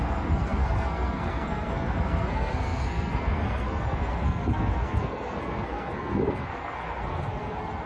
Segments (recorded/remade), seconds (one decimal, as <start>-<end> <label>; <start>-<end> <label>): 0.0-7.9 remade